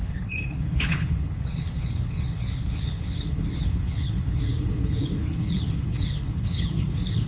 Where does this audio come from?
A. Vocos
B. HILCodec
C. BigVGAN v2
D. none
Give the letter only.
B